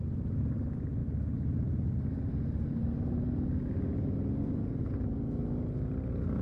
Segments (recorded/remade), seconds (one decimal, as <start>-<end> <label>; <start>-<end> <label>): 0.0-6.4 recorded